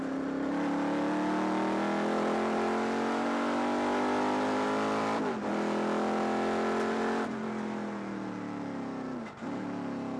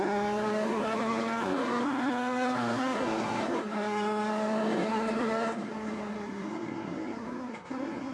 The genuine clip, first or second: first